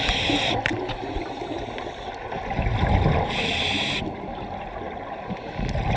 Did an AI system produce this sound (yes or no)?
no